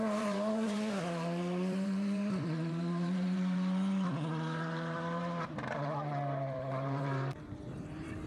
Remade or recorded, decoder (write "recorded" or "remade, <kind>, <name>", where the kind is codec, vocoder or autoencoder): remade, vocoder, BigVGAN v2